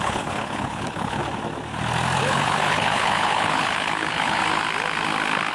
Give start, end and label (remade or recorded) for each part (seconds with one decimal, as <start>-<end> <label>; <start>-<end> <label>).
0.0-1.2 remade; 1.2-2.2 recorded; 2.2-4.4 remade; 4.4-5.5 recorded